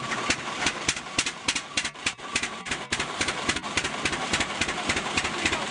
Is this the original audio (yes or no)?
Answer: no